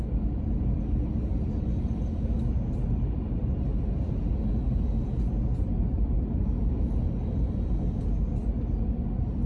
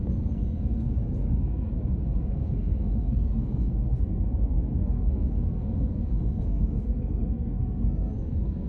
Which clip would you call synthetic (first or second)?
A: second